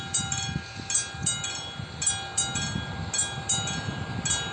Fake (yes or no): no